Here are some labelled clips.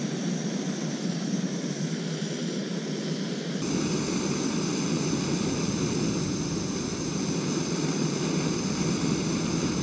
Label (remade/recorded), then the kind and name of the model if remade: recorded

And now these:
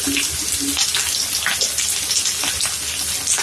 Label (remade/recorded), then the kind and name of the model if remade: recorded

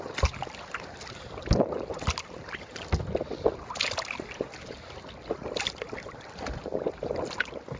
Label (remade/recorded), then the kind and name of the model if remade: recorded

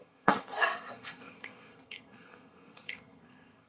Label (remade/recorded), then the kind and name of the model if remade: remade, codec, SNAC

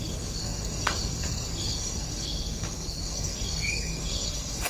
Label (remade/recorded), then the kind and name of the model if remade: remade, codec, SNAC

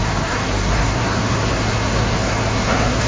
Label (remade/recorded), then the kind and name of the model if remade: remade, codec, SNAC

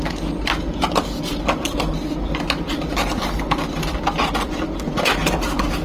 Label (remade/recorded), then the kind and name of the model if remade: recorded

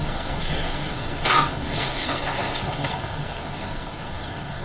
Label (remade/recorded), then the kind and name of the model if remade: remade, codec, SNAC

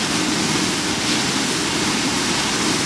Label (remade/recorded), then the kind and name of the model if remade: recorded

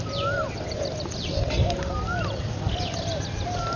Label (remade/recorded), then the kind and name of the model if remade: recorded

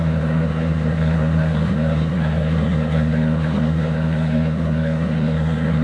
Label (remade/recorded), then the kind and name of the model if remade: remade, codec, SNAC